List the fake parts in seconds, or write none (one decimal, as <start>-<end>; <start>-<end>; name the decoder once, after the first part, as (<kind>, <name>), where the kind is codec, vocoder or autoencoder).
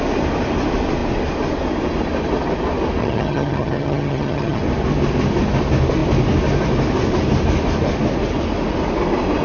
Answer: 3.0-4.6 (vocoder, HiFi-GAN)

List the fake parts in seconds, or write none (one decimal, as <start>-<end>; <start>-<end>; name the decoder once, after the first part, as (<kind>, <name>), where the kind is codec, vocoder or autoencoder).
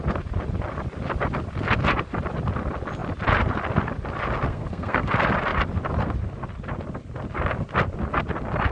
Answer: 4.5-5.1 (codec, SNAC)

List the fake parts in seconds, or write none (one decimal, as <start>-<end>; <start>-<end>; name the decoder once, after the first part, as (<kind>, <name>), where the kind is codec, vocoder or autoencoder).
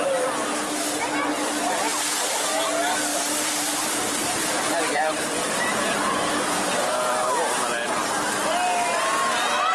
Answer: 3.1-7.4 (vocoder, BigVGAN v2)